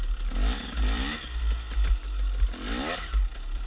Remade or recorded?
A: recorded